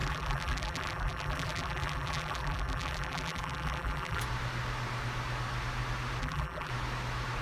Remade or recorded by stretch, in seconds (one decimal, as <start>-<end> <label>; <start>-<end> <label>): 0.0-4.2 remade; 4.2-6.2 recorded; 6.2-6.7 remade; 6.7-7.4 recorded